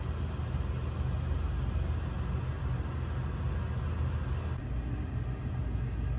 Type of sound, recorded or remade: recorded